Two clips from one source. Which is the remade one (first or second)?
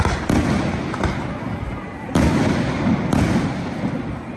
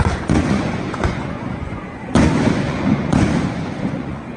second